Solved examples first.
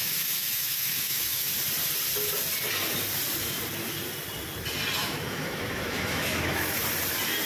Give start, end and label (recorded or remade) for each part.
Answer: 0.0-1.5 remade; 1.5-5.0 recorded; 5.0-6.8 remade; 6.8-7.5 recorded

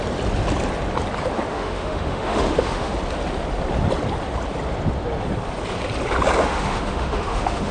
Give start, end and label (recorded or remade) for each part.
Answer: 0.0-1.5 recorded; 1.5-2.9 remade; 2.9-6.4 recorded; 6.4-7.7 remade

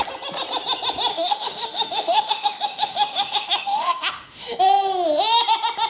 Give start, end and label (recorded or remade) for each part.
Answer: 0.0-1.1 recorded; 1.1-4.6 remade; 4.6-5.9 recorded

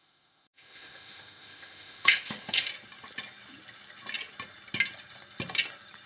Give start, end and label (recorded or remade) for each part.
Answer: 0.0-2.7 remade; 2.7-6.1 recorded

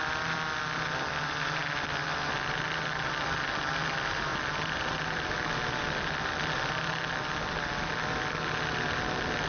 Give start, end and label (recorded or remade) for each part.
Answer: 0.0-9.5 recorded

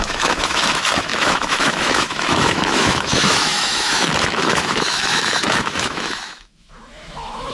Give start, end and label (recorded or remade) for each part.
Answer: 0.0-7.5 remade

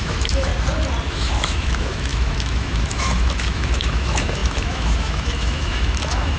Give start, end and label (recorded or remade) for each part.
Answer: 0.0-0.5 remade; 0.5-1.1 recorded; 1.1-6.4 remade

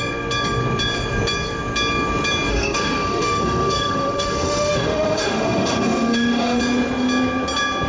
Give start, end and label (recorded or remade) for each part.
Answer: 0.0-2.5 recorded; 2.5-6.6 remade; 6.6-7.9 recorded